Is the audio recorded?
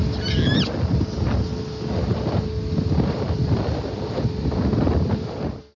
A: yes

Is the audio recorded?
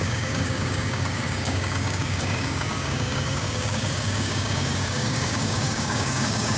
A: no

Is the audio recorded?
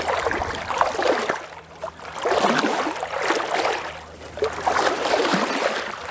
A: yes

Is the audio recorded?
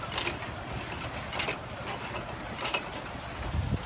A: yes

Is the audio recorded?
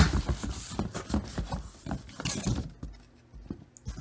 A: yes